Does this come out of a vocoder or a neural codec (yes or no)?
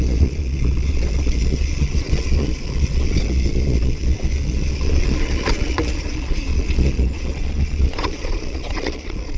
yes